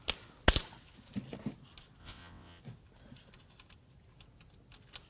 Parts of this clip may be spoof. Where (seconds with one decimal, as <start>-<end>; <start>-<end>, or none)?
2.0-2.6